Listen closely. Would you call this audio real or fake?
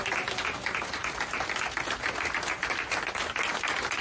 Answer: real